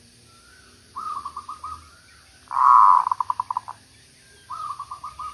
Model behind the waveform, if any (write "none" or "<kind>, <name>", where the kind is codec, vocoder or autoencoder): none